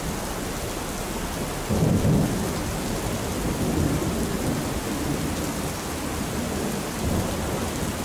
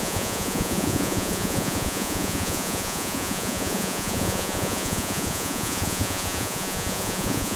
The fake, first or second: second